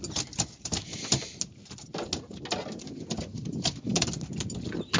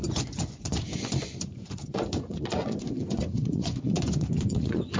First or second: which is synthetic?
second